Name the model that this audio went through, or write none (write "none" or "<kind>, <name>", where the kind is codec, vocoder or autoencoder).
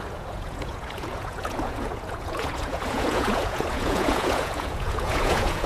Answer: vocoder, Vocos